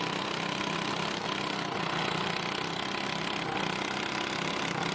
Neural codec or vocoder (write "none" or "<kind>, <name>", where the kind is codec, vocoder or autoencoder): none